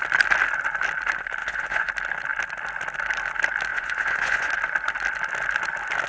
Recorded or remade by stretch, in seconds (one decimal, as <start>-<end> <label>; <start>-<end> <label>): 0.0-1.4 recorded; 1.4-1.9 remade; 1.9-3.7 recorded; 3.7-4.5 remade; 4.5-6.1 recorded